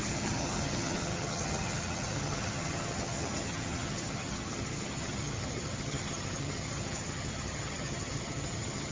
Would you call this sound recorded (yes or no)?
no